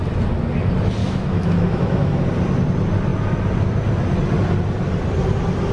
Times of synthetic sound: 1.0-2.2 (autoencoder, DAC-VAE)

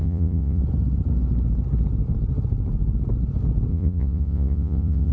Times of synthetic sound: 0.0-0.6 (vocoder, Vocos); 3.7-5.1

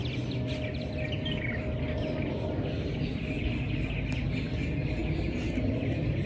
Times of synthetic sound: none

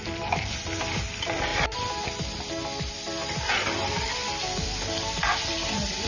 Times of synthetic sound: 0.0-1.5 (vocoder, BigVGAN v2); 2.9-6.1